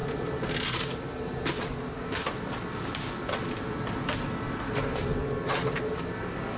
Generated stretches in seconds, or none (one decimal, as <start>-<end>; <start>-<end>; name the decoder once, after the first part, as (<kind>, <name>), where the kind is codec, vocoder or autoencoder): none